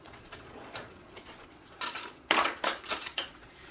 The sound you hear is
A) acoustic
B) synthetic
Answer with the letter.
B